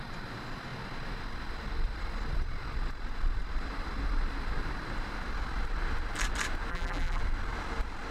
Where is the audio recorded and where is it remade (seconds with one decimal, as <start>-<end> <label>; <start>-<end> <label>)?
0.0-6.7 recorded; 6.7-7.2 remade; 7.2-8.1 recorded